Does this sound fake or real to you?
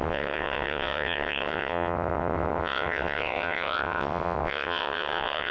fake